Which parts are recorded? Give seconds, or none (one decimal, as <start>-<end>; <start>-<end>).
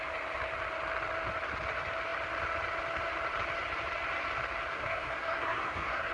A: 0.0-4.7